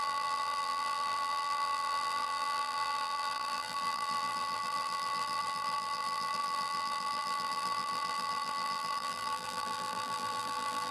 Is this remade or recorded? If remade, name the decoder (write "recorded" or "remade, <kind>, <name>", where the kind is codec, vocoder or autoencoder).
remade, vocoder, BigVGAN v2